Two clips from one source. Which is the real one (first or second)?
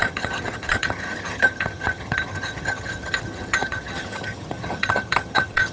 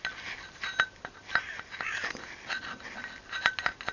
second